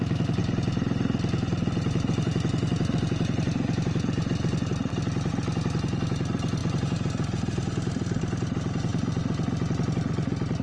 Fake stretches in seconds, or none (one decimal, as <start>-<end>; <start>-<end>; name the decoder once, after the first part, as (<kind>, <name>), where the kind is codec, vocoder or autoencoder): 6.6-8.2 (vocoder, BigVGAN v2)